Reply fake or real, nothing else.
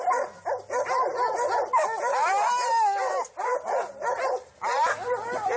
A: real